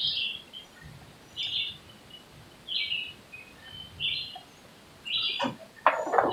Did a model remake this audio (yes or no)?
no